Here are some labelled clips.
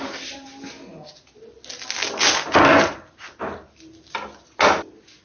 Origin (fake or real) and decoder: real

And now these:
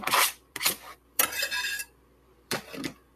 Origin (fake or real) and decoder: fake, vocoder, BigVGAN v2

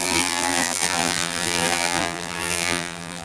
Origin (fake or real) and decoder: fake, vocoder, BigVGAN v2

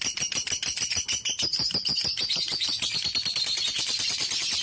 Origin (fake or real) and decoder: fake, vocoder, BigVGAN v2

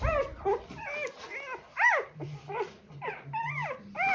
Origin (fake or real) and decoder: fake, vocoder, BigVGAN v2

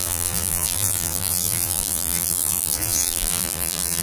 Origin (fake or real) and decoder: fake, vocoder, BigVGAN v2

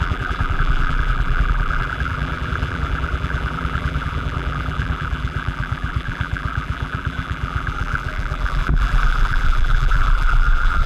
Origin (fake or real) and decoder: fake, vocoder, BigVGAN v2